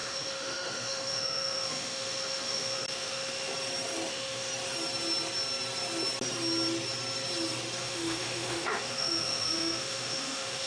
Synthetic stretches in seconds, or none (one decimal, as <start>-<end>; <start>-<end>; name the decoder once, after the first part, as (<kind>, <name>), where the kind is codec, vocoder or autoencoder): 0.0-3.5 (autoencoder, DAC-VAE); 4.1-4.5; 7.8-10.7